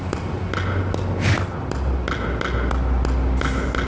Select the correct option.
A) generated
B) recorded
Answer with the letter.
B